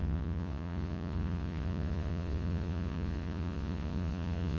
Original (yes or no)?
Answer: no